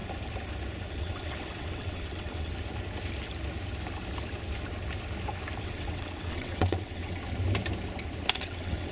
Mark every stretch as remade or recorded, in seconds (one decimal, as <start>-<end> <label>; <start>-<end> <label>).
0.0-0.9 recorded; 0.9-2.5 remade; 2.5-5.6 recorded; 5.6-7.2 remade; 7.2-8.3 recorded; 8.3-8.9 remade